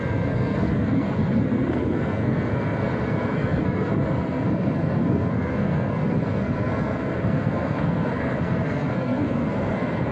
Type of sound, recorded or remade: remade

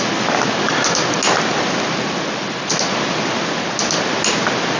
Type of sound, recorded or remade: recorded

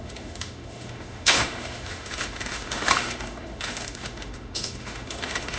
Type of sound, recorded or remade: remade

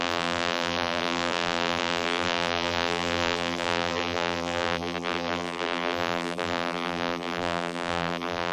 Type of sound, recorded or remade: remade